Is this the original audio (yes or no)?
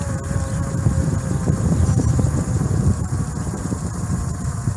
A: no